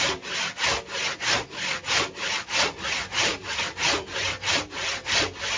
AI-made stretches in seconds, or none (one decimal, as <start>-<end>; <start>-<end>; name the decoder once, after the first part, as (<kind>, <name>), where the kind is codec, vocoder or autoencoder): none